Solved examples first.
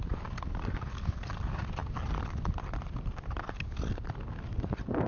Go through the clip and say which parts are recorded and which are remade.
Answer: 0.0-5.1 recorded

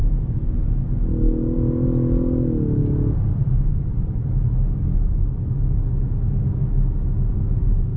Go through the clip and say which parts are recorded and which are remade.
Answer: 0.0-3.7 recorded; 3.7-8.0 remade

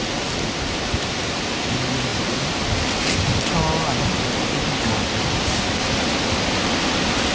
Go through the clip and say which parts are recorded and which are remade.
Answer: 0.0-7.3 recorded

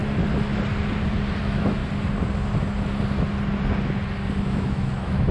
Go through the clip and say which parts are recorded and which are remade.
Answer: 0.0-1.4 recorded; 1.4-1.8 remade; 1.8-4.4 recorded; 4.4-5.3 remade

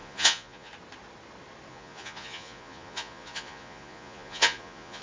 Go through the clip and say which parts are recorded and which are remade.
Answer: 0.0-0.7 remade; 0.7-1.7 recorded; 1.7-5.0 remade